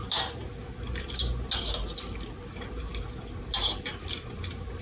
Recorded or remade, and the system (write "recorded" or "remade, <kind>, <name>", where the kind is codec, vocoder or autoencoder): recorded